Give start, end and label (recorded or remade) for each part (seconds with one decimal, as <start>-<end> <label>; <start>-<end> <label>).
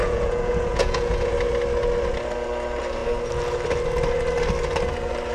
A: 0.0-1.3 remade; 1.3-5.3 recorded